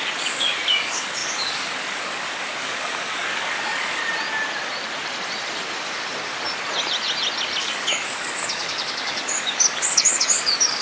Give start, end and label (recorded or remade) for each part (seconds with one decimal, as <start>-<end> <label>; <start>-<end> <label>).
0.0-4.0 remade; 4.0-7.6 recorded; 7.6-10.8 remade